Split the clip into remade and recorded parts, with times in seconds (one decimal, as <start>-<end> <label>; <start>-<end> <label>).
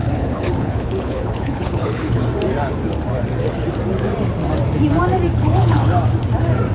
0.0-2.2 remade; 2.2-5.3 recorded; 5.3-5.9 remade; 5.9-6.7 recorded